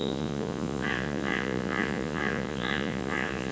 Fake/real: fake